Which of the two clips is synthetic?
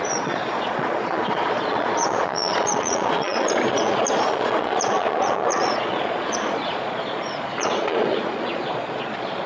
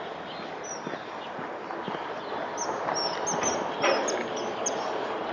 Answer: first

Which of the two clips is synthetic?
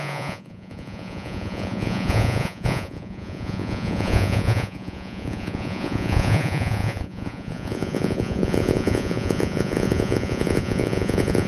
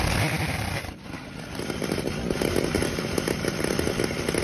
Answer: first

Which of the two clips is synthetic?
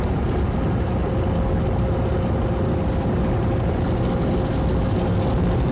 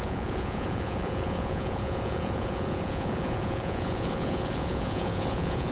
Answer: second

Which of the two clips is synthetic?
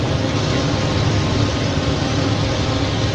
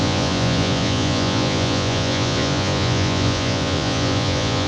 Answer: second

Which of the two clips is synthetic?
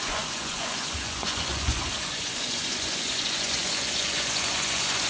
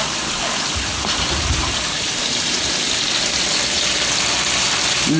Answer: first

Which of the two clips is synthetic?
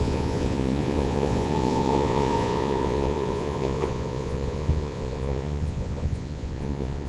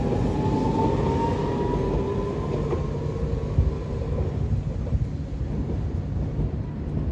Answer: first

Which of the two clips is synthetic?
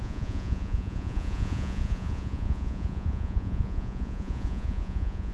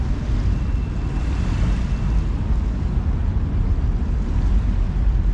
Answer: first